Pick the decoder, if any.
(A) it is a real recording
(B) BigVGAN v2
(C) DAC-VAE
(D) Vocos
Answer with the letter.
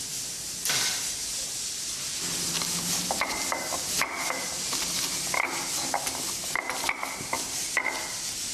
A